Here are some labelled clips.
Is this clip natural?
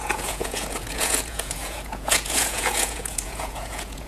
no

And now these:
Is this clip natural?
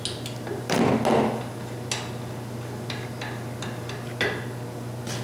yes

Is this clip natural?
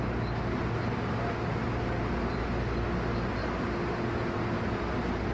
yes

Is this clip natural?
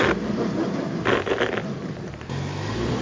yes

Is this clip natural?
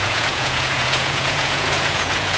no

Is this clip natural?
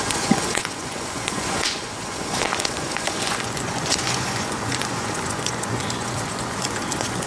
no